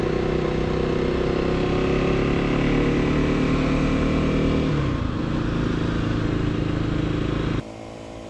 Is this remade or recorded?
recorded